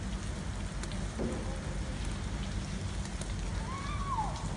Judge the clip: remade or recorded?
recorded